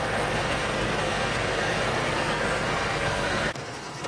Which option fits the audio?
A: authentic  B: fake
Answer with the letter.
B